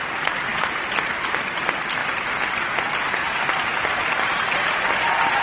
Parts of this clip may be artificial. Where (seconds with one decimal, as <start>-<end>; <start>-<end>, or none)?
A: none